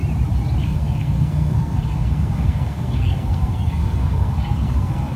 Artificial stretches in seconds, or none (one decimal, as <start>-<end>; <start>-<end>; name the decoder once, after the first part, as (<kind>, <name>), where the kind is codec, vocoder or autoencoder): 0.6-5.2 (codec, SNAC)